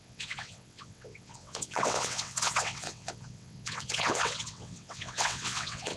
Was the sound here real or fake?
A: fake